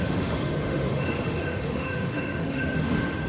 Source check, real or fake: fake